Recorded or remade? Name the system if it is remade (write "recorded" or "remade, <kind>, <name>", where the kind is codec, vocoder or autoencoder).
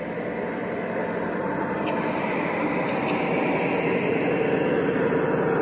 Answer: recorded